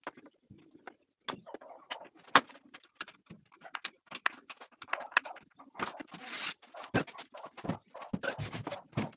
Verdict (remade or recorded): recorded